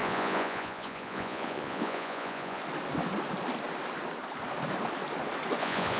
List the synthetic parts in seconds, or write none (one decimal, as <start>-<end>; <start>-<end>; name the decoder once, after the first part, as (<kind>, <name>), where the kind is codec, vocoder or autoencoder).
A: 0.0-2.6 (vocoder, Vocos); 5.6-6.0